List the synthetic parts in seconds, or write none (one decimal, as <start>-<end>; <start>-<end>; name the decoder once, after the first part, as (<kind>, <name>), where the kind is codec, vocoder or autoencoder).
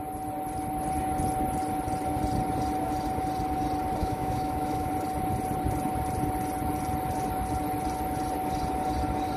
4.0-4.9 (autoencoder, DAC-VAE)